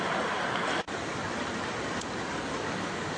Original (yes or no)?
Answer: yes